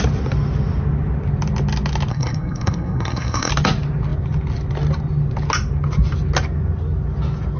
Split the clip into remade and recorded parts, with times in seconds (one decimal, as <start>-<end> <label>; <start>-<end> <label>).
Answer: 0.0-2.1 recorded; 2.1-3.5 remade; 3.5-7.6 recorded